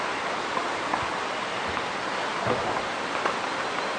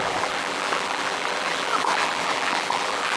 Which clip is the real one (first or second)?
first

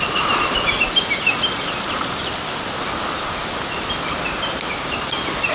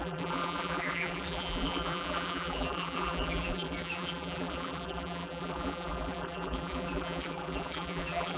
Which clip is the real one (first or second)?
first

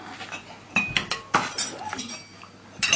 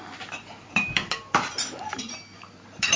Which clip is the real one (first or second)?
first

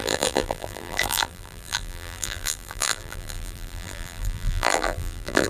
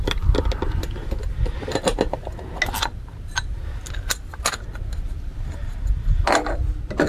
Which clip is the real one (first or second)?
second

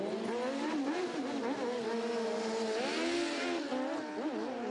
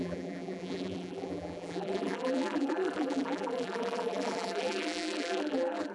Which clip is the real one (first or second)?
first